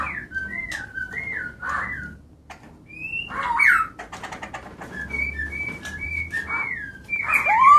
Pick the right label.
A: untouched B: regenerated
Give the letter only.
A